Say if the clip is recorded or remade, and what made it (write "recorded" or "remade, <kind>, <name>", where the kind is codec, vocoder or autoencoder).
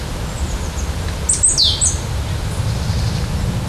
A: recorded